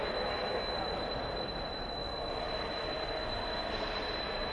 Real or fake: real